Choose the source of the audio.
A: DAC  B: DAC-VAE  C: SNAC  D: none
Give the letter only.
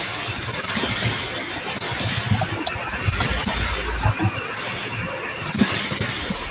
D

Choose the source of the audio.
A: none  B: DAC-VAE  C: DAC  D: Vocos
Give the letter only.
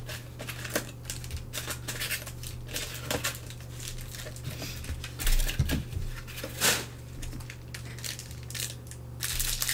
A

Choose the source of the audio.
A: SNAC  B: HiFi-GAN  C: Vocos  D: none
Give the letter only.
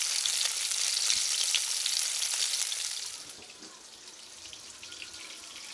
D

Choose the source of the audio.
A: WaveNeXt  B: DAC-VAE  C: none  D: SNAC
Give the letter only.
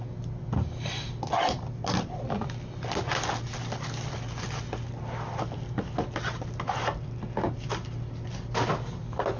C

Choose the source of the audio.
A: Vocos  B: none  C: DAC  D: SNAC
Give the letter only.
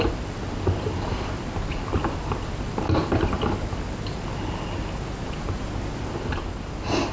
B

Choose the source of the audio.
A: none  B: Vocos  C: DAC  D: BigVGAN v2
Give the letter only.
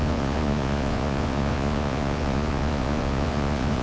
B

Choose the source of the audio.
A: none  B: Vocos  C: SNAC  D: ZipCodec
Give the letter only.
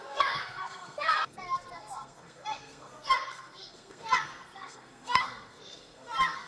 C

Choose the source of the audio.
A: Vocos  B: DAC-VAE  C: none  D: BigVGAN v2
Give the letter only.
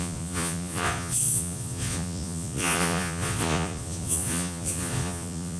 A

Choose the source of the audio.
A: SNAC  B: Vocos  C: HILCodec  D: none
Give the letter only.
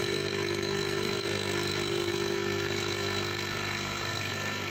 A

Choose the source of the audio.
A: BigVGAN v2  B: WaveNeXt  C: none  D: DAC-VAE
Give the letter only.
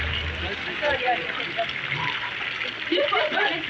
C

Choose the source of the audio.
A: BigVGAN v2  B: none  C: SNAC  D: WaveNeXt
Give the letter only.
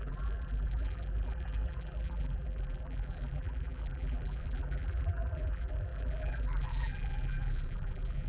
A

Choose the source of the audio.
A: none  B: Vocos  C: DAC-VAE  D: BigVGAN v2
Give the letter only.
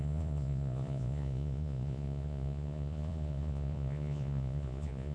B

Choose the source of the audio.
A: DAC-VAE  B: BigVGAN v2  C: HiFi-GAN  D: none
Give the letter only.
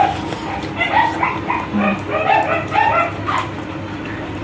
D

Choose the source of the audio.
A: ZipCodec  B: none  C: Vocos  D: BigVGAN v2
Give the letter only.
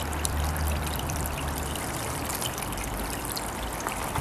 D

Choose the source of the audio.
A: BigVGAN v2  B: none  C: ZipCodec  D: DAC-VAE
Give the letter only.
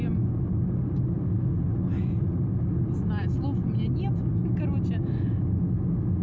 B